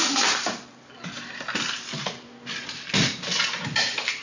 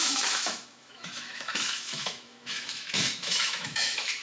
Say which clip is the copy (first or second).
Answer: second